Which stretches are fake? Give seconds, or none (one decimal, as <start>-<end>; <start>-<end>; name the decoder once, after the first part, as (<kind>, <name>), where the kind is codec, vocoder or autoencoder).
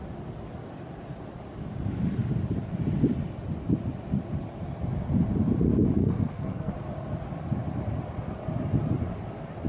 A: 6.0-6.7 (codec, SNAC)